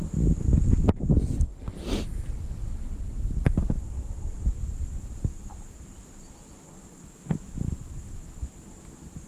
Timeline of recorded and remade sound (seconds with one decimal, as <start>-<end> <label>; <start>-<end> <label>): 0.0-9.3 recorded